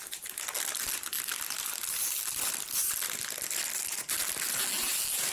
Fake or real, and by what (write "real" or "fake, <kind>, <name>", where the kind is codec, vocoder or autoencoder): real